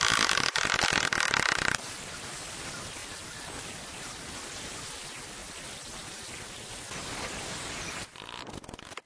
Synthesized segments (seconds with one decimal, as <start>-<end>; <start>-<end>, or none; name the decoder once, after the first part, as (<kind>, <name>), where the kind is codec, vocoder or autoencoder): none